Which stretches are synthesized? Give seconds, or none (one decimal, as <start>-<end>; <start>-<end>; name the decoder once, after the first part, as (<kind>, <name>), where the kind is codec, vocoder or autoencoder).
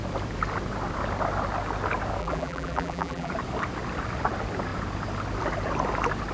2.2-3.3 (vocoder, BigVGAN v2)